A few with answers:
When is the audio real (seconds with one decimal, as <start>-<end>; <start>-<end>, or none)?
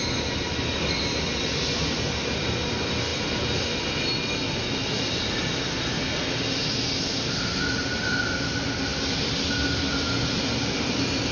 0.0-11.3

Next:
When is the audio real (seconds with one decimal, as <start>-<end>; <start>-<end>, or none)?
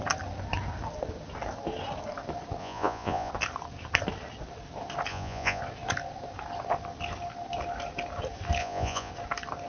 0.0-2.6; 3.3-5.1; 5.6-8.6; 9.1-9.7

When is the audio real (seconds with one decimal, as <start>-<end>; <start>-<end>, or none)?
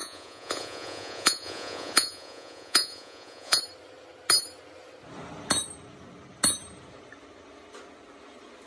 3.6-8.7